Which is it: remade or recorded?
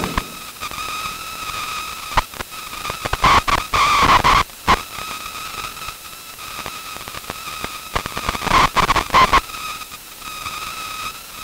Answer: recorded